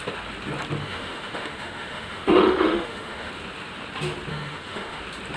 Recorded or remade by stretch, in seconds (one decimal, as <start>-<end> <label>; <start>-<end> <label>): 0.0-0.8 recorded; 0.8-3.3 remade; 3.3-4.3 recorded; 4.3-5.0 remade; 5.0-5.4 recorded

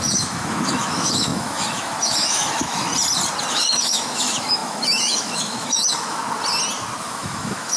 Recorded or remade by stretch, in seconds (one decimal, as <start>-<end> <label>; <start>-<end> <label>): 0.0-2.9 remade; 2.9-3.5 recorded; 3.5-6.2 remade; 6.2-7.0 recorded; 7.0-7.8 remade

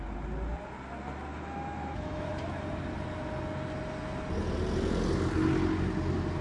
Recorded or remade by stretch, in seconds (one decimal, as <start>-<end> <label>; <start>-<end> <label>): 0.0-1.3 recorded; 1.3-2.3 remade; 2.3-6.4 recorded

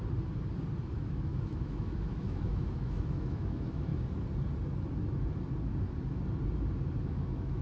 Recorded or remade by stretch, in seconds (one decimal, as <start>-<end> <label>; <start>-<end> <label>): 0.0-0.9 recorded; 0.9-3.9 remade; 3.9-7.0 recorded; 7.0-7.6 remade

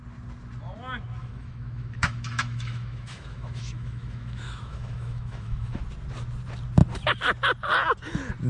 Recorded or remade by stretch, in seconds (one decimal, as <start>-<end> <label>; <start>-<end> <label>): 0.0-1.2 recorded; 1.2-5.8 remade; 5.8-8.5 recorded

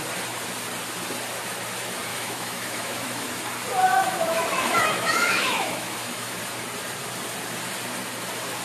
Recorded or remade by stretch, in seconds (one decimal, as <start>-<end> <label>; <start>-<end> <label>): 0.0-2.1 recorded; 2.1-3.4 remade; 3.4-3.9 recorded; 3.9-6.4 remade; 6.4-8.6 recorded